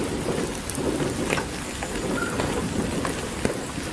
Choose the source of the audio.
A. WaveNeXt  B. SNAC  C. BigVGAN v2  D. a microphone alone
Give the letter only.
D